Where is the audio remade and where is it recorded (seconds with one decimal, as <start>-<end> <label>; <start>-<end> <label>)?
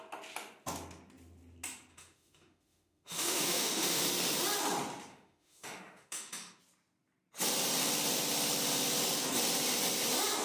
0.0-1.9 recorded; 1.9-4.0 remade; 4.0-5.1 recorded; 5.1-6.6 remade; 6.6-10.4 recorded